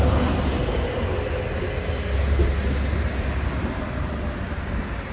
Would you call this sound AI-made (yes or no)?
no